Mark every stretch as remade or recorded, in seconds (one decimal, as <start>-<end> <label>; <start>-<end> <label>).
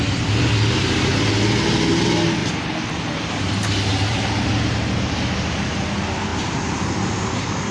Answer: 0.0-2.4 recorded; 2.4-3.3 remade; 3.3-3.9 recorded; 3.9-4.6 remade; 4.6-6.3 recorded; 6.3-6.9 remade; 6.9-7.7 recorded